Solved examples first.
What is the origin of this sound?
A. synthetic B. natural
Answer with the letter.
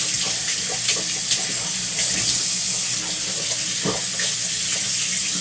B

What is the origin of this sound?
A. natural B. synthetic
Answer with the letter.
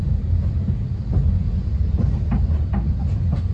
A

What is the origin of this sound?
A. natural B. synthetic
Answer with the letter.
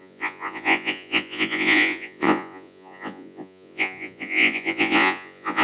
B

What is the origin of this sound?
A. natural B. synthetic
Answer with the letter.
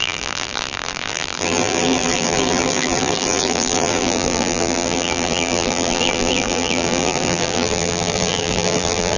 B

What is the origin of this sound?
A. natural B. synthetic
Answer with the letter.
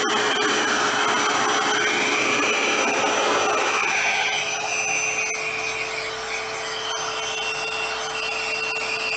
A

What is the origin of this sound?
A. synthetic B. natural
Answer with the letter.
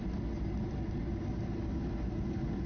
B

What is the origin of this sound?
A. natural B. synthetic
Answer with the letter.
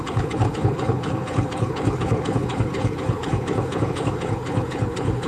B